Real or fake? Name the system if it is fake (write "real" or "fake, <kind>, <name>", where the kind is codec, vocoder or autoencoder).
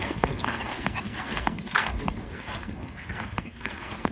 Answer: fake, codec, SNAC